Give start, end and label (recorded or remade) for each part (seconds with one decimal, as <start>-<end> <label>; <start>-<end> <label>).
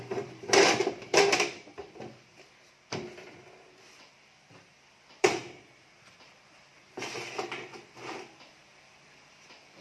0.0-1.8 remade; 1.8-3.9 recorded; 3.9-5.4 remade; 5.4-8.8 recorded; 8.8-9.8 remade